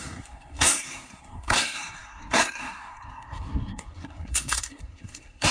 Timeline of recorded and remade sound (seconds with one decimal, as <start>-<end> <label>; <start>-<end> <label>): 0.0-5.5 remade